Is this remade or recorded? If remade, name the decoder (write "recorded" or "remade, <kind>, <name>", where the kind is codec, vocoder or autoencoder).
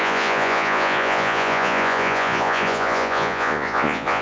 remade, vocoder, Vocos